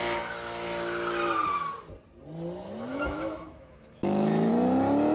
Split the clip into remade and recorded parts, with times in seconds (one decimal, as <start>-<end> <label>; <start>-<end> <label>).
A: 0.0-2.9 recorded; 2.9-4.5 remade; 4.5-5.1 recorded